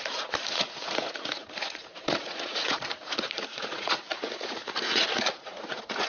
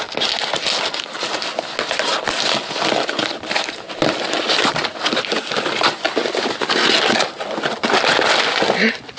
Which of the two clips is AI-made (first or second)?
first